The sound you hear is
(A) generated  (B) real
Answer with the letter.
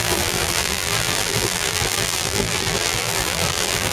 A